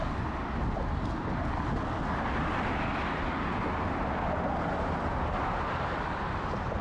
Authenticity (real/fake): real